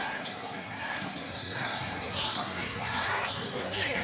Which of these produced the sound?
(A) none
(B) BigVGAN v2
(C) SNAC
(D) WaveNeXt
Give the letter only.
C